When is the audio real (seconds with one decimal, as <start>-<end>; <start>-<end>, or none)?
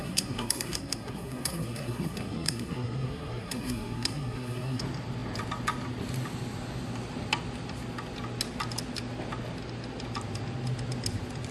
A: 4.8-11.5